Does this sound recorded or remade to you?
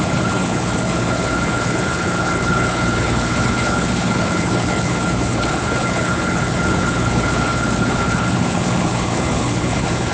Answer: remade